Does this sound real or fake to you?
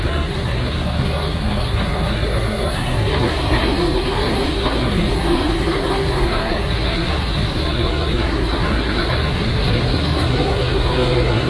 fake